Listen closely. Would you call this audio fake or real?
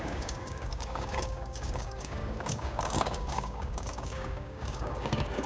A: fake